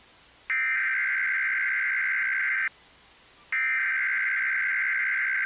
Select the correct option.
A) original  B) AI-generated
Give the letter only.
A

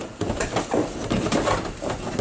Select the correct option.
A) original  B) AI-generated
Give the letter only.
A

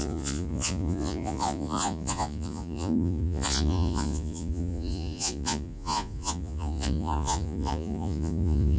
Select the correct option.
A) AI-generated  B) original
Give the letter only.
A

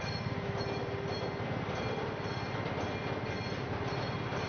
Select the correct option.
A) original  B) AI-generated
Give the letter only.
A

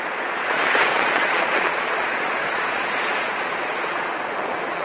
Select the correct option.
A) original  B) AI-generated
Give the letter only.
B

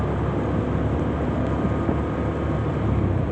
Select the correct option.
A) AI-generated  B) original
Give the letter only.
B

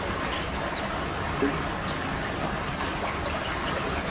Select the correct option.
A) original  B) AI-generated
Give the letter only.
A